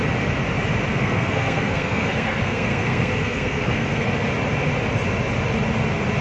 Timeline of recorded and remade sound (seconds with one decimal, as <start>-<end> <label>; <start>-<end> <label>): 0.0-0.9 recorded; 0.9-4.1 remade; 4.1-6.2 recorded